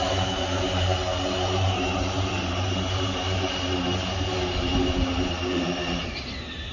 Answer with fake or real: fake